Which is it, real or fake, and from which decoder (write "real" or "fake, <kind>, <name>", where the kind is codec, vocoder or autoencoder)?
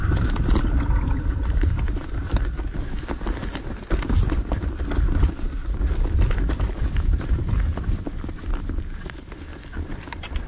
real